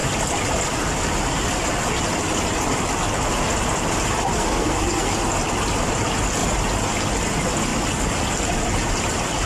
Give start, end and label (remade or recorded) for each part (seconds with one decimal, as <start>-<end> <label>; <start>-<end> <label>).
0.0-4.3 recorded; 4.3-5.1 remade; 5.1-9.5 recorded

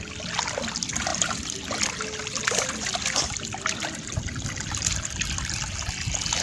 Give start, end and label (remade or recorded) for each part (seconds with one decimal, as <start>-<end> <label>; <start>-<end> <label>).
0.0-6.4 recorded

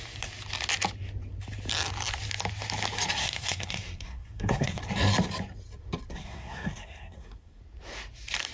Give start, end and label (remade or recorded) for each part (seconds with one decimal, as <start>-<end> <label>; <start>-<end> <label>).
0.0-3.2 recorded; 3.2-4.8 remade; 4.8-6.1 recorded; 6.1-7.6 remade; 7.6-8.5 recorded

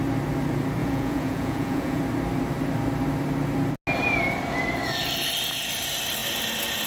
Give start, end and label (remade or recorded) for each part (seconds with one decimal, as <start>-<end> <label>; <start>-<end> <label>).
0.0-0.8 recorded; 0.8-2.0 remade; 2.0-6.9 recorded

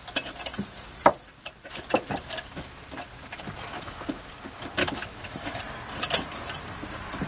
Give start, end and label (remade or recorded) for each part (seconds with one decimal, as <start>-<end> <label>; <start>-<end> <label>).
0.0-4.8 recorded; 4.8-5.6 remade; 5.6-7.3 recorded

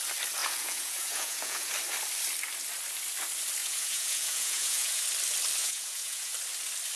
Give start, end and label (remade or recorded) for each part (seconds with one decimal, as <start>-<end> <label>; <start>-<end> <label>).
0.0-0.4 recorded; 0.4-1.7 remade; 1.7-3.6 recorded; 3.6-5.0 remade; 5.0-5.6 recorded; 5.6-6.3 remade; 6.3-7.0 recorded

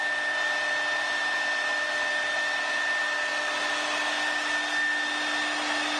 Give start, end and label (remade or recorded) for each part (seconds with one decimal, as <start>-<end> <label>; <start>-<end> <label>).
0.0-6.0 recorded

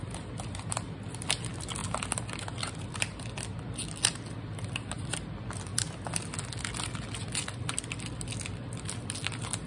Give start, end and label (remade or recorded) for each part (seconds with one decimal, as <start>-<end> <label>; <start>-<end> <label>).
0.0-9.7 recorded